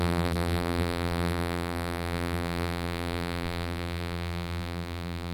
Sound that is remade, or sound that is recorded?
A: remade